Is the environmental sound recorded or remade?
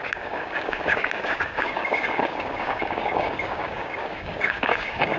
remade